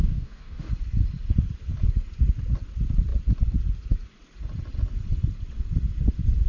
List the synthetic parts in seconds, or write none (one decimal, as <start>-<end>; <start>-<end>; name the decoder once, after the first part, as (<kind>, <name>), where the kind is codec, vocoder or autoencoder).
0.0-0.7 (codec, DAC)

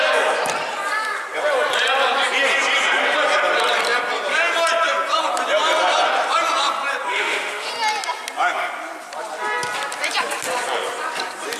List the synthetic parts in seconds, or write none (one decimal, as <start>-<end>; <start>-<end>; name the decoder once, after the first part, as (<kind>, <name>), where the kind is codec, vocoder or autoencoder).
7.1-7.7 (autoencoder, DAC-VAE)

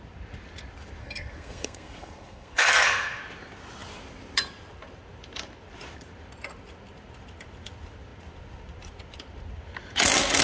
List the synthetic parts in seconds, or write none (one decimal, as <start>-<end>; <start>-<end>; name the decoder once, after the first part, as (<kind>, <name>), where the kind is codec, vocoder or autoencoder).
1.0-3.2 (codec, SNAC)

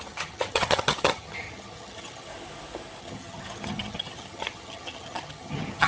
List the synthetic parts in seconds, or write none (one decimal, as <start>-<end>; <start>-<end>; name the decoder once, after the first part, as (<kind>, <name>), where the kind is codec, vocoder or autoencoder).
0.0-2.3 (vocoder, HiFi-GAN); 3.0-5.9